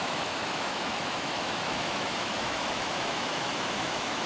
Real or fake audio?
fake